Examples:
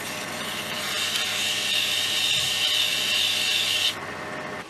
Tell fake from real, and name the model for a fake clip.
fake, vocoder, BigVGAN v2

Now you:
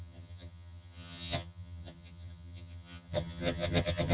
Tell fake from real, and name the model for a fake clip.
fake, vocoder, HiFi-GAN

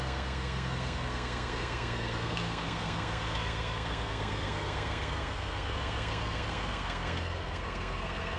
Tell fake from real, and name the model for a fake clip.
fake, codec, SNAC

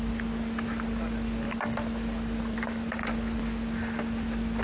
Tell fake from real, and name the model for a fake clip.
real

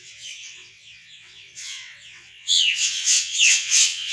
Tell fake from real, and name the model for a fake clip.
fake, vocoder, WaveNeXt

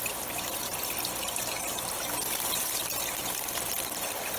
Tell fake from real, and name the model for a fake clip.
real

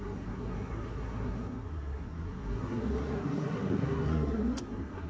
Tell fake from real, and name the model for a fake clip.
fake, codec, SNAC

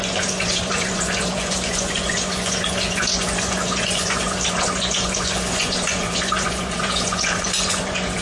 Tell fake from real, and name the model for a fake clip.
fake, vocoder, Vocos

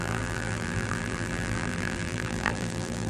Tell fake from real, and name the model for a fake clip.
fake, vocoder, BigVGAN v2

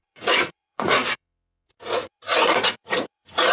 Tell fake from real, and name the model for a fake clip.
fake, vocoder, Vocos